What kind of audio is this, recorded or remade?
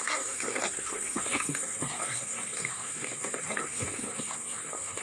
remade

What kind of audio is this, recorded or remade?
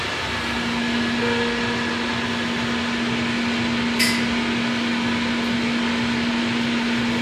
recorded